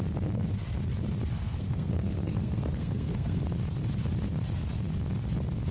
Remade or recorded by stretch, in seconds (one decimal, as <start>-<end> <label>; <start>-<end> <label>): 0.0-1.3 recorded; 1.3-3.4 remade; 3.4-5.7 recorded